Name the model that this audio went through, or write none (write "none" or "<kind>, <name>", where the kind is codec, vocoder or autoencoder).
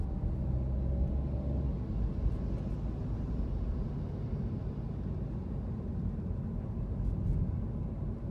none